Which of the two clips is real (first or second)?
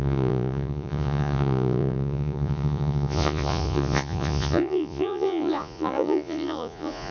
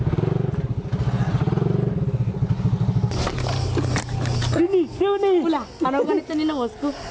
second